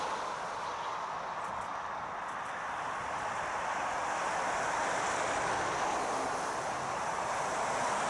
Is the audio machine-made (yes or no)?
no